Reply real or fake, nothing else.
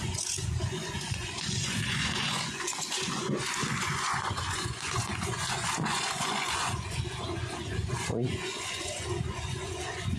fake